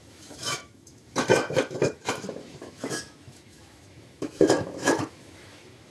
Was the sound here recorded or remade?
remade